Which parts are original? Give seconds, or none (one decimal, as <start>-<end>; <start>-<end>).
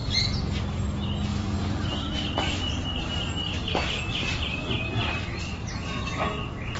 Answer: 0.0-1.3; 2.7-6.8